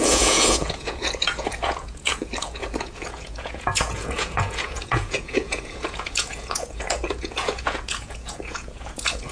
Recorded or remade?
remade